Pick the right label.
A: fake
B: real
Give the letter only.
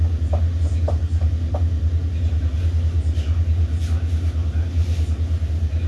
B